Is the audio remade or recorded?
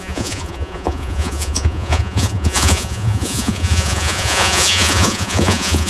remade